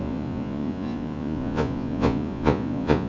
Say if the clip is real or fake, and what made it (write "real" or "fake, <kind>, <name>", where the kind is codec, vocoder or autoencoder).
fake, vocoder, Vocos